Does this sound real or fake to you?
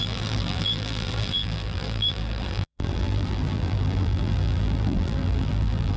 fake